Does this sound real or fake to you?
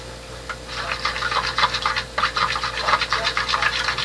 real